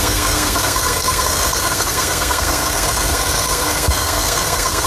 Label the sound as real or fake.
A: fake